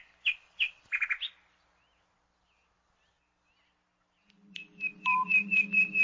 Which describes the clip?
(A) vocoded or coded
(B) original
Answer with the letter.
B